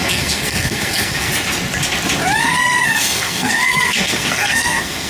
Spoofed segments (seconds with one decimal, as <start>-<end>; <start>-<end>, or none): 0.0-1.3; 2.4-5.1